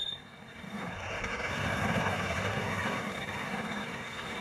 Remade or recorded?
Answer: remade